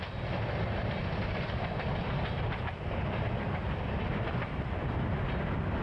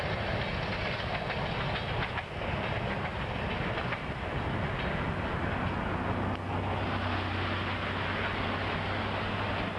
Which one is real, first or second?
second